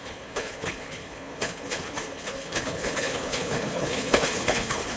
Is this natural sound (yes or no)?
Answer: no